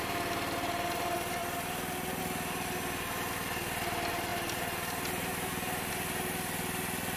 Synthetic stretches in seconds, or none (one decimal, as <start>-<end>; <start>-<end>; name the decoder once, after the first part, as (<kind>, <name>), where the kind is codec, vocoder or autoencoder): 4.3-5.9 (vocoder, BigVGAN v2)